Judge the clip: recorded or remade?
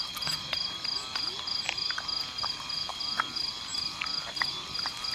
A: recorded